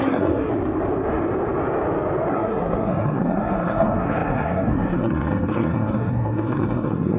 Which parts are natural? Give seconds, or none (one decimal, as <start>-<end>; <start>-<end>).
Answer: 0.5-2.3